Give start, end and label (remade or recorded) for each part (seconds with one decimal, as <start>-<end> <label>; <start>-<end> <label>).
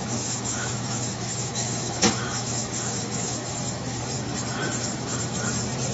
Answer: 0.0-3.5 remade; 3.5-5.9 recorded